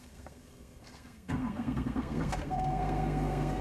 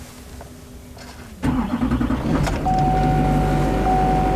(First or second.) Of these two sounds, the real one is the second